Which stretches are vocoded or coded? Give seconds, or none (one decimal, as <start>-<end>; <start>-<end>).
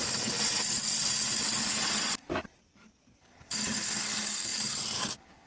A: none